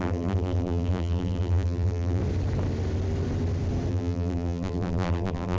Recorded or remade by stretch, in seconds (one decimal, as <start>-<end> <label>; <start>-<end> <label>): 0.0-2.2 remade; 2.2-3.9 recorded; 3.9-5.6 remade